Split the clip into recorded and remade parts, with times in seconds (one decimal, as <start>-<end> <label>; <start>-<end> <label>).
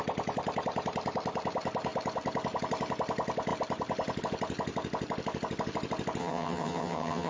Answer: 0.0-6.2 recorded; 6.2-7.3 remade